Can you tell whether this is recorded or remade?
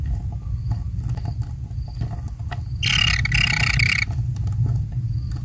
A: recorded